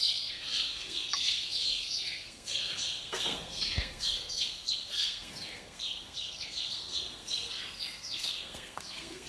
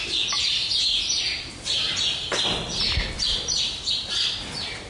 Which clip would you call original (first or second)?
second